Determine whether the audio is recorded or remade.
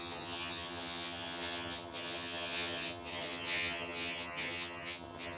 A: remade